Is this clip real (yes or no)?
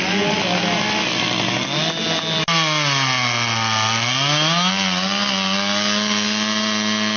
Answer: yes